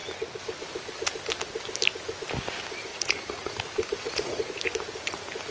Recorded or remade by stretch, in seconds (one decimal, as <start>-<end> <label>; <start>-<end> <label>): 0.0-2.9 recorded; 2.9-3.5 remade; 3.5-3.9 recorded; 3.9-4.6 remade; 4.6-5.5 recorded